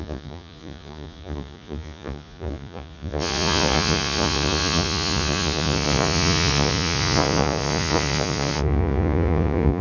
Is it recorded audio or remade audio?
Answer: remade